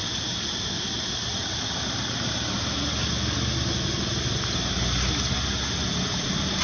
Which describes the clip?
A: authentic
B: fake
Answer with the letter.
A